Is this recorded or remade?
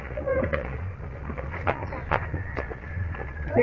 remade